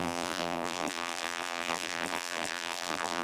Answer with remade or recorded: remade